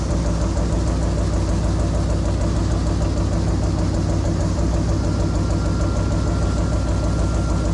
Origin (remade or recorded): recorded